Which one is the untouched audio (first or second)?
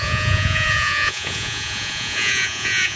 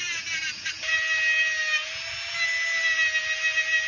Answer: second